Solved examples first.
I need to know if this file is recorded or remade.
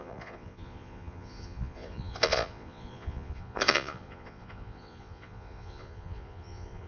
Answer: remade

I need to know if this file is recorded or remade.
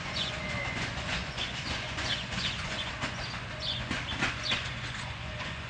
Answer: remade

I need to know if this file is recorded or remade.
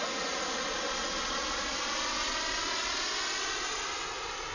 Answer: recorded